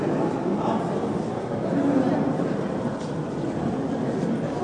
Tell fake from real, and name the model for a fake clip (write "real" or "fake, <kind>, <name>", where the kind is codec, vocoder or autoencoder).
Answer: real